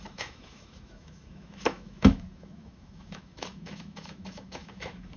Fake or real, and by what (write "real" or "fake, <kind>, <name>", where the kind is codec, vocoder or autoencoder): fake, autoencoder, DAC-VAE